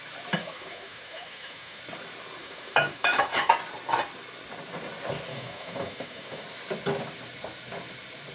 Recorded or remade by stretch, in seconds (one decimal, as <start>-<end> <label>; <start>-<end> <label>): 0.0-0.4 recorded; 0.4-1.8 remade; 1.8-2.4 recorded; 2.4-3.5 remade; 3.5-5.3 recorded; 5.3-6.4 remade; 6.4-8.3 recorded